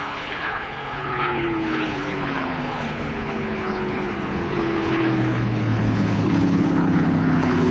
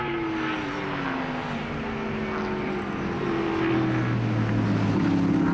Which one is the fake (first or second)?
first